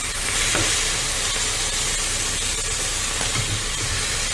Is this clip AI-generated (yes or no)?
no